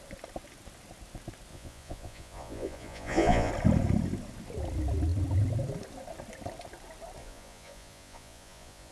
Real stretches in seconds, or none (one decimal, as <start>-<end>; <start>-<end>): 0.0-1.5; 3.5-7.2